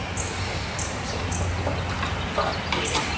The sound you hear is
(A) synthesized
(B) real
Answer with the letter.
B